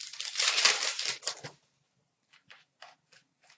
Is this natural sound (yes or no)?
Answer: yes